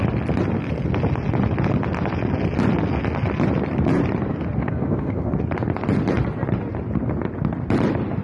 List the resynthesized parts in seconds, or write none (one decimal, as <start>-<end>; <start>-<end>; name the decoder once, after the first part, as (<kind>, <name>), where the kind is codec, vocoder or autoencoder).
4.6-5.3 (codec, SNAC)